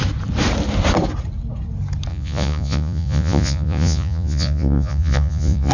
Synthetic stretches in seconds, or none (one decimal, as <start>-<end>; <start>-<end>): 2.1-5.7

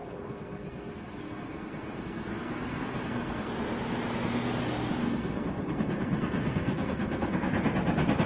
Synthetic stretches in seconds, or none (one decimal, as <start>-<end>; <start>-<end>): 0.0-3.5; 5.0-7.4

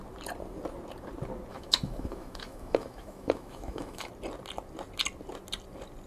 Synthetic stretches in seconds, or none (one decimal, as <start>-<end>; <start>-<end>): 1.5-4.1